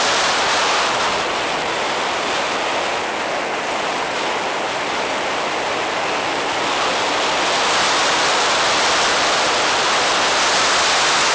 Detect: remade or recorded recorded